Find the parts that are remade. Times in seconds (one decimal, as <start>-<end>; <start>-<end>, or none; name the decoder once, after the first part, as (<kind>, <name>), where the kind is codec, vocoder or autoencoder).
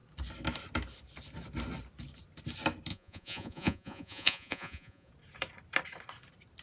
2.9-5.1 (vocoder, Vocos)